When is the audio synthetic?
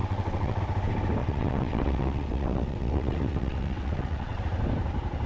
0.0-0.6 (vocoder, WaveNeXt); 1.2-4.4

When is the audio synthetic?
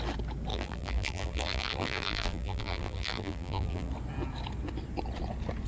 0.5-3.9 (vocoder, BigVGAN v2)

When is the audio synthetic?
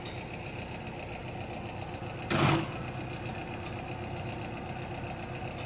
none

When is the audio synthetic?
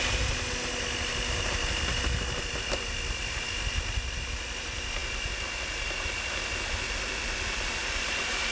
none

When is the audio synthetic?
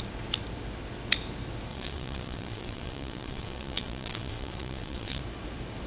1.7-5.2 (vocoder, WaveNeXt)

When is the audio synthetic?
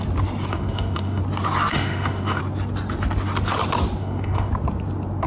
0.5-1.2 (autoencoder, DAC-VAE); 1.7-2.4; 4.0-4.5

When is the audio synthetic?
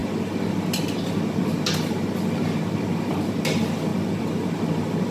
none